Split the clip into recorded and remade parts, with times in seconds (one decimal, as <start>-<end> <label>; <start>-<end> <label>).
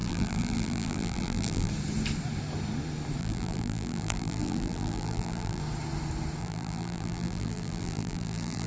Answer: 0.0-1.7 remade; 1.7-3.2 recorded; 3.2-5.6 remade; 5.6-6.4 recorded; 6.4-8.7 remade